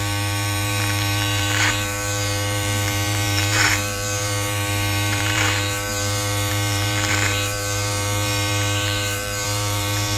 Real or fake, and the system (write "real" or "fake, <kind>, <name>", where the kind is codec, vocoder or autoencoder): fake, vocoder, BigVGAN v2